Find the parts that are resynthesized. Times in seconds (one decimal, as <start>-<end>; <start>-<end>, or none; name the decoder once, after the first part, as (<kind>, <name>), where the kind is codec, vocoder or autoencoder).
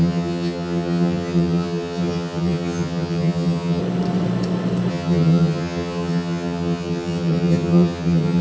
0.0-3.8 (vocoder, HiFi-GAN); 4.9-8.4